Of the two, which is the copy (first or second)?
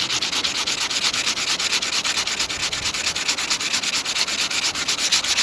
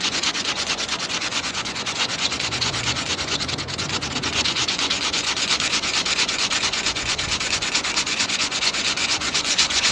second